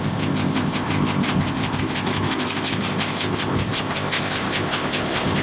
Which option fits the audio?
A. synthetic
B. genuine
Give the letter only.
A